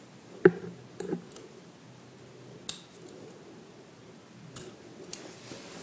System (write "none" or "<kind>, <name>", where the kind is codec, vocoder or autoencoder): none